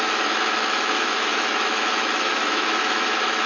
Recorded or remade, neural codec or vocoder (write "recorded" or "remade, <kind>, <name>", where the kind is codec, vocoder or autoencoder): remade, autoencoder, DAC-VAE